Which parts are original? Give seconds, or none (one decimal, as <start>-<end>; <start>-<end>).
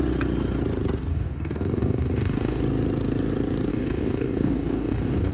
0.0-1.1; 2.6-3.7